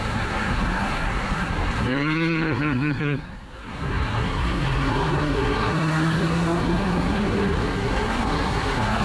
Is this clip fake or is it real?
fake